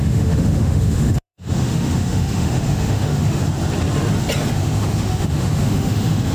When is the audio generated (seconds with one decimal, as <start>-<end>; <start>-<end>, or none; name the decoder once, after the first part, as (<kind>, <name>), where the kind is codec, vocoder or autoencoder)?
0.0-3.4 (autoencoder, DAC-VAE); 4.5-6.3